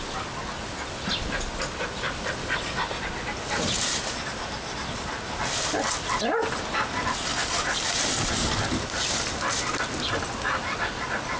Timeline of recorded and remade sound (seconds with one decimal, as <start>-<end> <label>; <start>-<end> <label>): 0.0-11.4 recorded